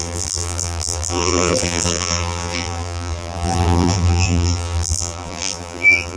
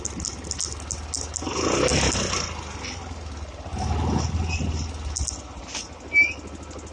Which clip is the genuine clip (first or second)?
second